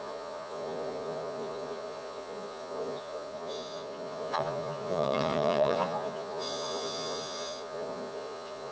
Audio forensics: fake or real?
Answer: fake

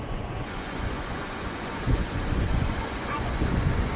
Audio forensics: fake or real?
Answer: fake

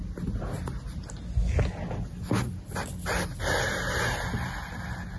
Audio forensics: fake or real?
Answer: real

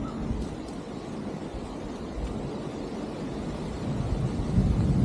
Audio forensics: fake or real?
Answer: real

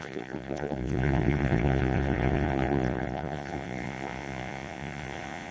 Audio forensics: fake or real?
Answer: fake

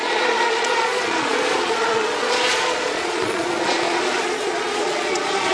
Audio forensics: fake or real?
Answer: fake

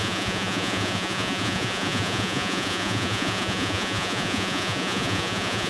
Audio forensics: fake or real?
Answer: fake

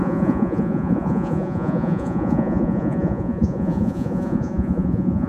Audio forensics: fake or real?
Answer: fake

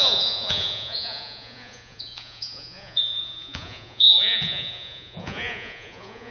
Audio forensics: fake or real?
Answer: fake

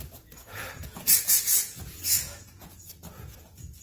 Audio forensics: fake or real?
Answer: fake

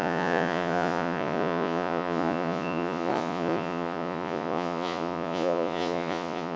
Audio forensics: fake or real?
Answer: fake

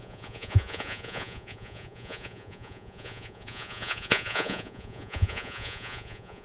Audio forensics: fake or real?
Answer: fake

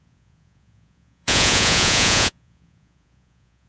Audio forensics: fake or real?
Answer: fake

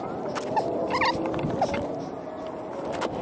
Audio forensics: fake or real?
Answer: real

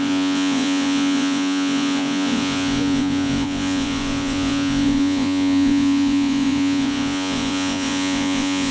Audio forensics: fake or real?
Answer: fake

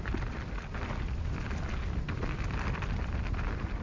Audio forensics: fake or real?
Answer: real